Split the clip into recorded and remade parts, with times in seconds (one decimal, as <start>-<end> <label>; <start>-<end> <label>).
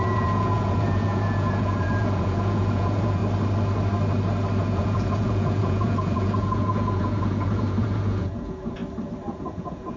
0.0-3.2 remade; 3.2-4.6 recorded; 4.6-8.8 remade; 8.8-9.3 recorded; 9.3-10.0 remade